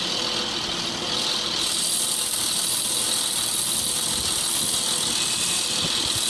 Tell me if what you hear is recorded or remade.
recorded